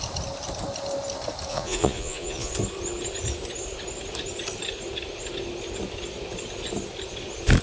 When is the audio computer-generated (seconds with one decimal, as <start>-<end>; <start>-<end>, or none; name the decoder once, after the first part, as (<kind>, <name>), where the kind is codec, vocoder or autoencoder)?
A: 1.5-2.5 (vocoder, Vocos)